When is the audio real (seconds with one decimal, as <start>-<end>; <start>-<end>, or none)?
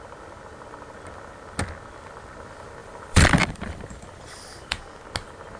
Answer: 0.0-2.8; 4.8-5.6